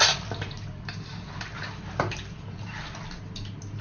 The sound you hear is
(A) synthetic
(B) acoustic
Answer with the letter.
B